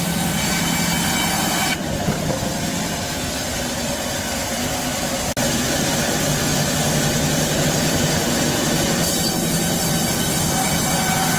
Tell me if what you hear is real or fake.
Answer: real